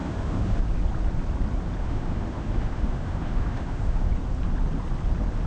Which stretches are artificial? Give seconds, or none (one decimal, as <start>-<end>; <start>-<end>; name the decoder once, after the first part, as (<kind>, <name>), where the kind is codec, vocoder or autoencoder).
0.0-0.6 (autoencoder, DAC-VAE); 1.8-4.1

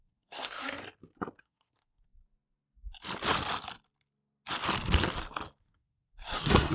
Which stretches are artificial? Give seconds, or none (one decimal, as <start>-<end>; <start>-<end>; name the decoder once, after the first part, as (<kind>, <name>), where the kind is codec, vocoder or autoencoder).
0.0-0.8 (codec, SNAC); 1.4-2.2; 5.6-6.7